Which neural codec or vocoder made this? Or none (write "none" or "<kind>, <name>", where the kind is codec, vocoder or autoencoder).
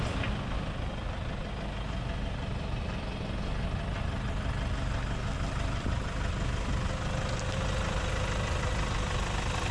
none